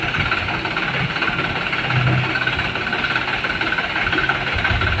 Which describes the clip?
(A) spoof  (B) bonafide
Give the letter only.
B